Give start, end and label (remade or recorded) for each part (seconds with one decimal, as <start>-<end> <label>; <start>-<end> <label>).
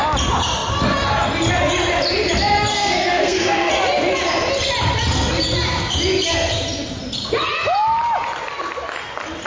0.0-2.7 recorded; 2.7-3.7 remade; 3.7-9.5 recorded